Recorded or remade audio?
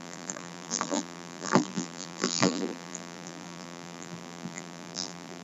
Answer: remade